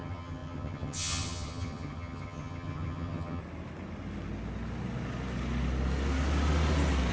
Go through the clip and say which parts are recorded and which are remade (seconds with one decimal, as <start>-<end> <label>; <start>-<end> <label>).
0.0-3.4 remade; 3.4-7.1 recorded